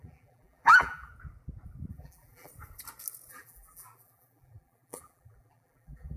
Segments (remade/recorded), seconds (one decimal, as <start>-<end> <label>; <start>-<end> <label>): 0.0-1.1 remade; 1.1-1.9 recorded; 1.9-2.5 remade; 2.5-3.3 recorded; 3.3-6.2 remade